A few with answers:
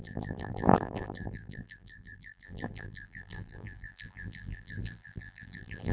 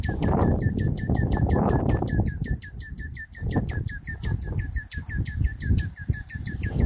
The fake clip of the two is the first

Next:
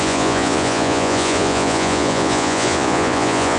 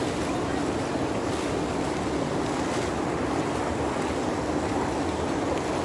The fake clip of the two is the first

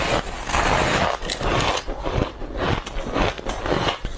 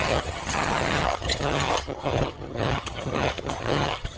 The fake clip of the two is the second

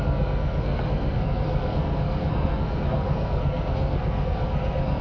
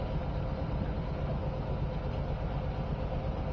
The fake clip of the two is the first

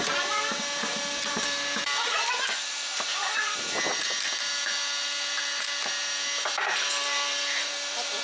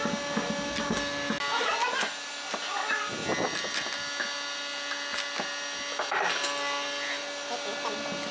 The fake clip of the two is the first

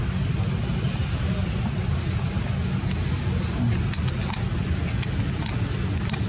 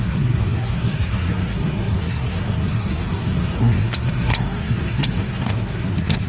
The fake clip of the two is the second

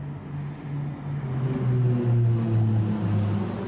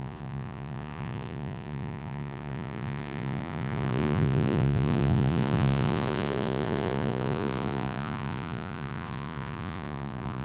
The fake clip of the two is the second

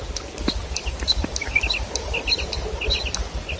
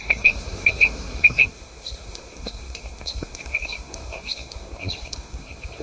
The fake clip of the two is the second